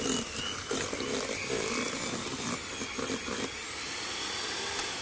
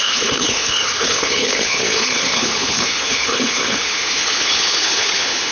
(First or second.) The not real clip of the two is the second